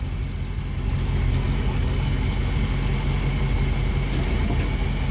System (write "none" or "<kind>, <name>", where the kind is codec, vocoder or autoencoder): none